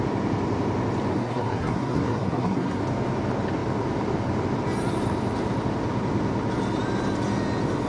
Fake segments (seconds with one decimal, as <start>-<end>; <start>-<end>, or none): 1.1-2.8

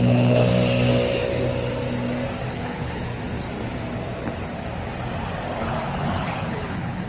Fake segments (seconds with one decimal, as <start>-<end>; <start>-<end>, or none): 0.0-0.5; 2.5-3.1; 5.6-7.1

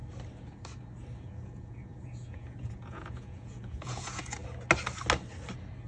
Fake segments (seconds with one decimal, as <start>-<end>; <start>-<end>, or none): 1.2-4.4

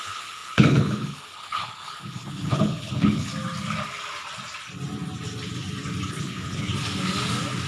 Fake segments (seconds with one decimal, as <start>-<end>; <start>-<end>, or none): 0.0-3.3; 6.1-6.7

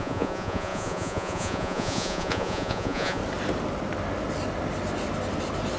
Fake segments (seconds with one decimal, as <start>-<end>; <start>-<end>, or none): 0.0-3.2